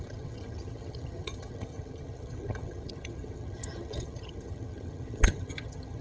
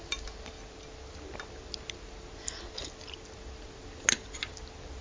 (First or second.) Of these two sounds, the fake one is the first